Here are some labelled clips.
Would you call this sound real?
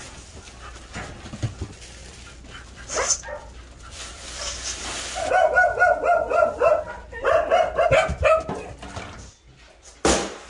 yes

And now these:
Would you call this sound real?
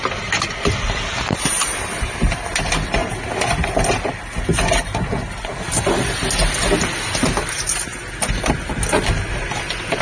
yes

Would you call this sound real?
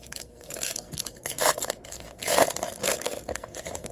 no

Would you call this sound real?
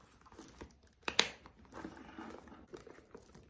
no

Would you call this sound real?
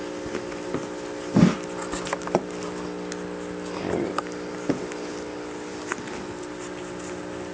yes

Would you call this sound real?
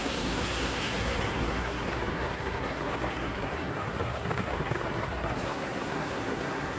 no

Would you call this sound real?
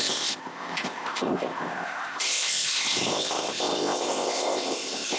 no